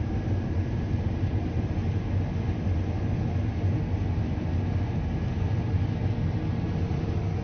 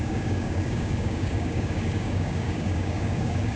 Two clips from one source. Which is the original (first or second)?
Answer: first